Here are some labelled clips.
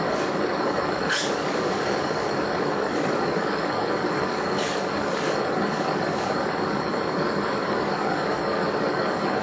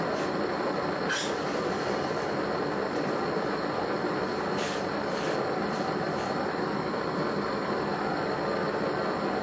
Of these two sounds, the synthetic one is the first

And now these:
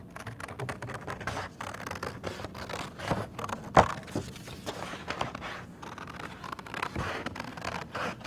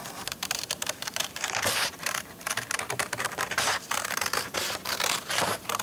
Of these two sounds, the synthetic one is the second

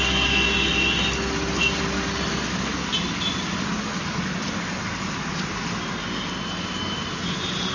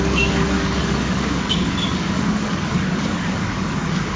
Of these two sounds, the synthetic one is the second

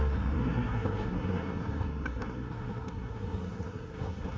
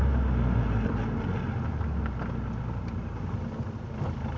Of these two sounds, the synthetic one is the first